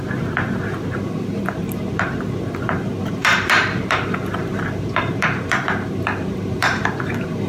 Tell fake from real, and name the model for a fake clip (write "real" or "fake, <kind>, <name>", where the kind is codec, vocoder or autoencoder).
fake, vocoder, BigVGAN v2